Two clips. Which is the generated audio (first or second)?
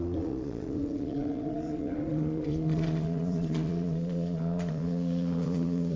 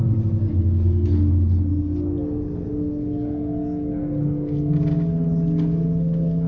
first